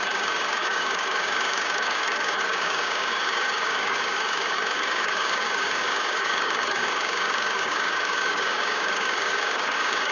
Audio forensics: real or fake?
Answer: fake